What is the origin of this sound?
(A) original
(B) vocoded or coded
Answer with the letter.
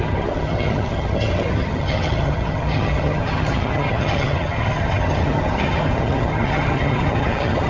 B